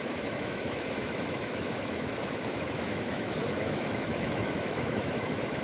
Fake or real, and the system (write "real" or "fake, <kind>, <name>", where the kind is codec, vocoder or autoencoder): fake, autoencoder, DAC-VAE